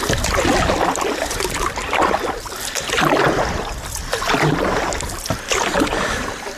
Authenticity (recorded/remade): recorded